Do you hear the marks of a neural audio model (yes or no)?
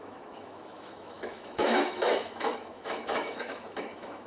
yes